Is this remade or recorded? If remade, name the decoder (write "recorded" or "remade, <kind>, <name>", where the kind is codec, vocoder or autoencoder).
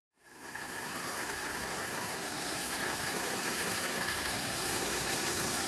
remade, codec, SNAC